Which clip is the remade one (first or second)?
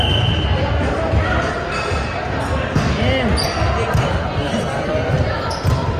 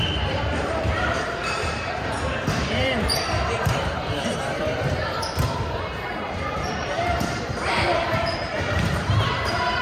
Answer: second